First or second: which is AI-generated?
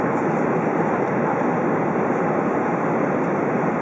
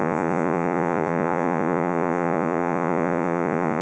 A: second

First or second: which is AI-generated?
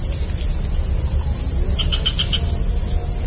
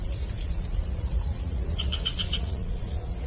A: second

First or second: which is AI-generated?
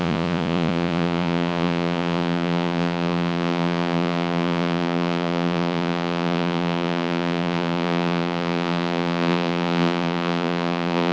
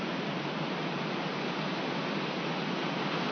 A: first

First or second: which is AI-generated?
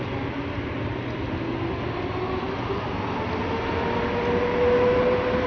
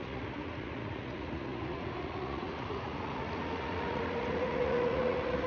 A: second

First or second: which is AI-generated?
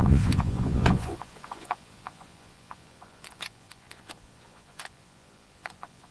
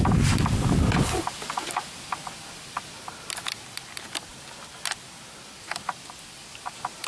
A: first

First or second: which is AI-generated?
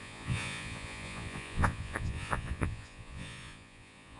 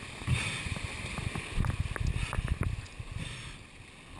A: first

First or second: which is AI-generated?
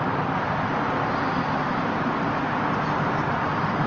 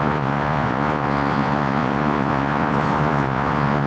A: second